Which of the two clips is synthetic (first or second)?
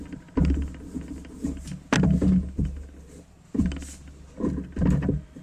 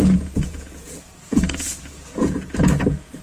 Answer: second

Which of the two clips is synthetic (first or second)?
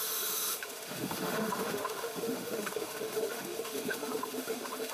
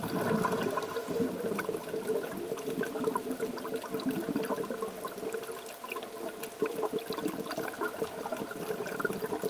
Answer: first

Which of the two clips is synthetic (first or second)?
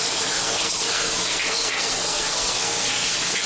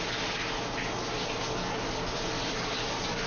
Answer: first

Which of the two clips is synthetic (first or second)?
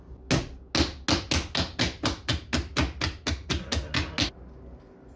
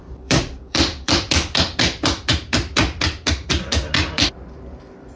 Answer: second